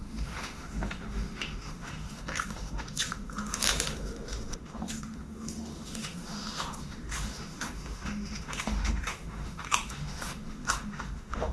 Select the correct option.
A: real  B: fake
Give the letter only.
B